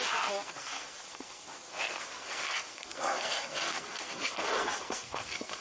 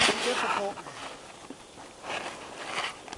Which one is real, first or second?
second